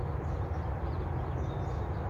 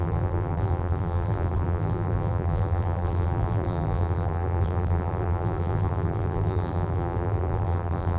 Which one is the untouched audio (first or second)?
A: first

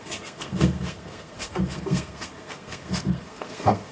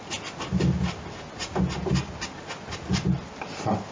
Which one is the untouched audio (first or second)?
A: second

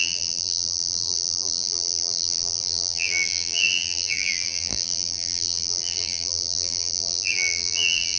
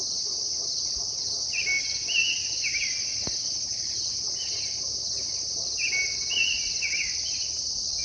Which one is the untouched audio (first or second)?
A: second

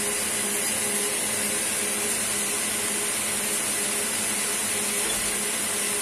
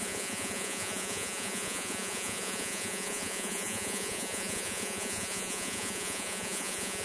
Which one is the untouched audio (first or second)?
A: first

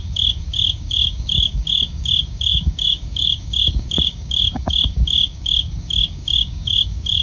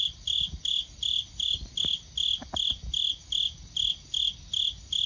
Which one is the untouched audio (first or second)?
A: second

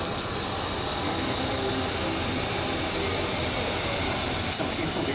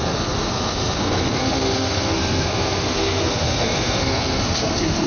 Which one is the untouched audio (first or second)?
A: first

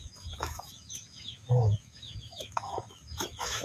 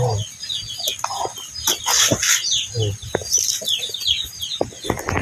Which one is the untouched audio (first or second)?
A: second